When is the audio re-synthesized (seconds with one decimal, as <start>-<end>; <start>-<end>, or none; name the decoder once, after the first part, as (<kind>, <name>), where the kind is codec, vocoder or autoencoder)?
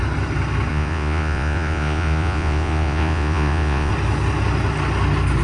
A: 0.7-3.9 (vocoder, Vocos)